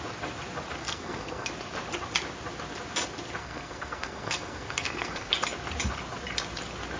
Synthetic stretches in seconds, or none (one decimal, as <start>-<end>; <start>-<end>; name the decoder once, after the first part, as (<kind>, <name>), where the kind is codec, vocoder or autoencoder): 0.8-1.5 (codec, SNAC); 3.4-5.3